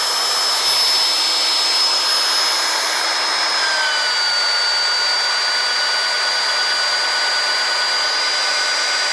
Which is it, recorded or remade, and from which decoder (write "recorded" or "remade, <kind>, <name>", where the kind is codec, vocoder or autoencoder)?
recorded